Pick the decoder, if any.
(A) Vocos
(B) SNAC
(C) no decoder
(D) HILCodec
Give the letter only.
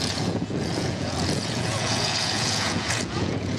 A